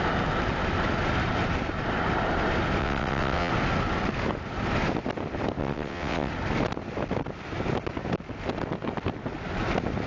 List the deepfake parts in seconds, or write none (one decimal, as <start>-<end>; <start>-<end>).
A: 2.8-3.5; 5.6-6.3